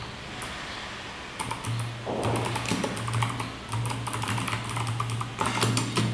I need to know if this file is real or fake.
real